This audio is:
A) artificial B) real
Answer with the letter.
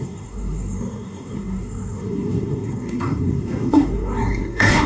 A